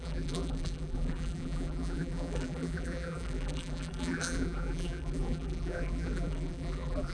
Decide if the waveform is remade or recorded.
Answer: remade